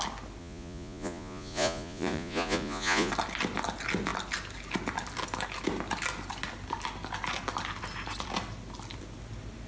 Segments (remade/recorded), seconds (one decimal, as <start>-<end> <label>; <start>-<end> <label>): 0.0-0.4 recorded; 0.4-3.1 remade; 3.1-9.7 recorded